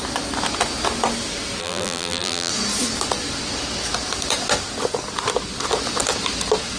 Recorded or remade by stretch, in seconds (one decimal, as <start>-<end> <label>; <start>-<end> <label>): 0.0-1.6 recorded; 1.6-2.5 remade; 2.5-6.8 recorded